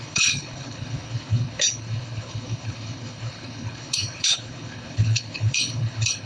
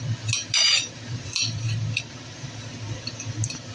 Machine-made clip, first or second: first